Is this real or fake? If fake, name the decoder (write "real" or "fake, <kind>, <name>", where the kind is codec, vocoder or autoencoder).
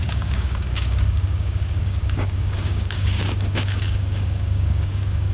fake, codec, DAC